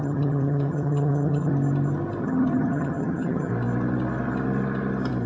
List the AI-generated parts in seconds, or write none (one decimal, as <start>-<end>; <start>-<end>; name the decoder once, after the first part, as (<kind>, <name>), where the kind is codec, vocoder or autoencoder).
0.0-1.5 (vocoder, HiFi-GAN); 2.2-3.5